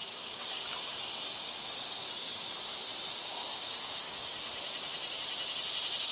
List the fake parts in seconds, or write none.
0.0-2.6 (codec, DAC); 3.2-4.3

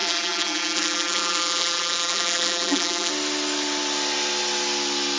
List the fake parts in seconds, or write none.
0.0-3.1 (vocoder, BigVGAN v2)

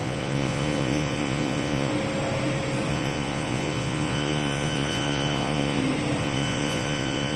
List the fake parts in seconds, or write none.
0.0-1.9 (vocoder, Vocos); 2.9-5.8; 6.2-7.4